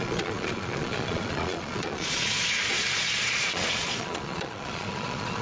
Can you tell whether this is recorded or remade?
remade